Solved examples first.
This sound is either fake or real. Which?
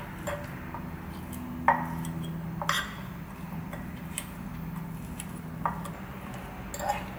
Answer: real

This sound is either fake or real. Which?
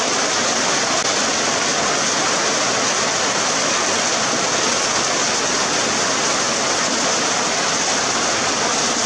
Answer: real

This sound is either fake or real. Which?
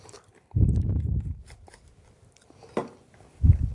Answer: real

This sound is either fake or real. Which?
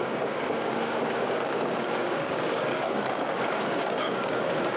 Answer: fake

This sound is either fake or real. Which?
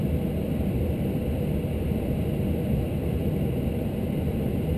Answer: real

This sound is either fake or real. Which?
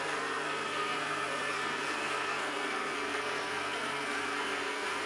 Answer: fake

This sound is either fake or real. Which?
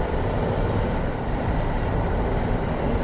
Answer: fake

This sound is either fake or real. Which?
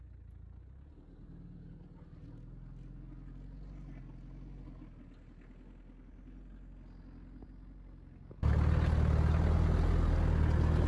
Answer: real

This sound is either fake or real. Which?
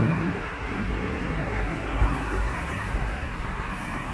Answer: fake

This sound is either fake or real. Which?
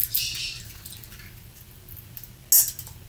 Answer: real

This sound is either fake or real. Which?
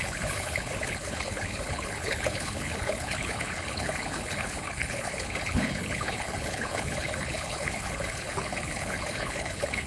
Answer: fake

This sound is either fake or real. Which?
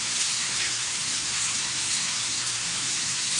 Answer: fake